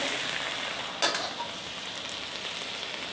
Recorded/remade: recorded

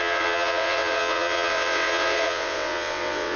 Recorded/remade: remade